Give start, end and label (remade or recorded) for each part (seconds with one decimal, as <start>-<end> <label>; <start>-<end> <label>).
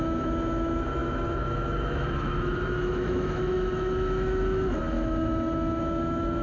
0.0-6.4 remade